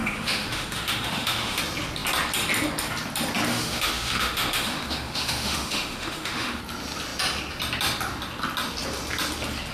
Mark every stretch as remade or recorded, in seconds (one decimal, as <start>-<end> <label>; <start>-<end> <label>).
0.0-1.6 remade; 1.6-3.5 recorded; 3.5-6.6 remade; 6.6-9.7 recorded